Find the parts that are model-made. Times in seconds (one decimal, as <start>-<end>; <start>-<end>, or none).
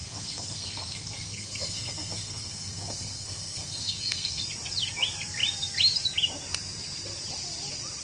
0.0-4.4